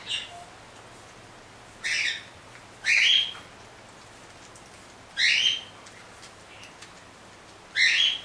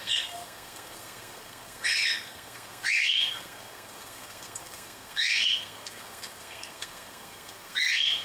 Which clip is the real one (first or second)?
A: first